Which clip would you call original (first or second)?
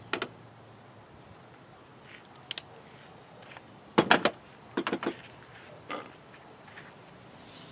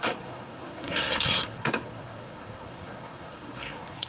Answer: first